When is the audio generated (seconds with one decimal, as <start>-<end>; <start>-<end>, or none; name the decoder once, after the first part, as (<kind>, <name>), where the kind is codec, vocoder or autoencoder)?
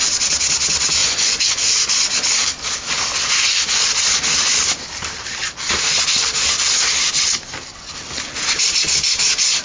1.0-1.8 (vocoder, Vocos)